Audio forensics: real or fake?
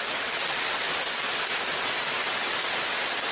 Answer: real